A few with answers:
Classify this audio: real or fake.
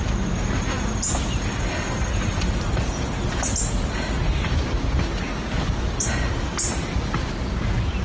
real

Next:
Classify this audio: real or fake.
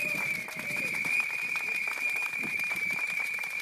fake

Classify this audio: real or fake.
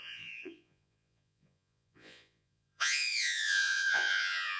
fake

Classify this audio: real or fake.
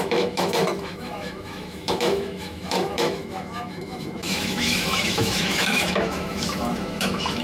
fake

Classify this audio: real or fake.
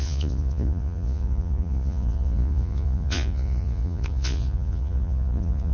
fake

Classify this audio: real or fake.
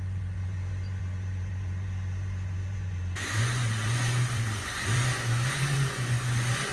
fake